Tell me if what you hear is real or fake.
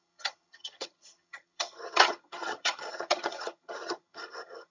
fake